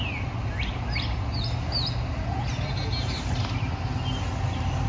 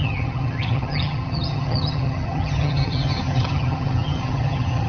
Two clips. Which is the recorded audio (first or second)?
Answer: first